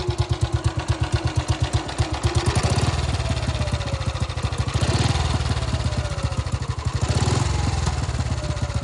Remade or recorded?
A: recorded